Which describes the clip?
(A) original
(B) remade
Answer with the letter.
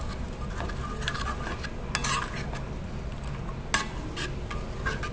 A